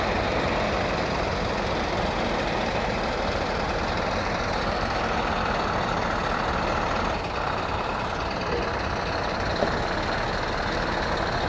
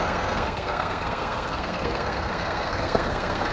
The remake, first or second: second